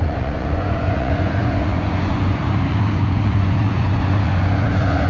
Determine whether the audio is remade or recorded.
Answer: remade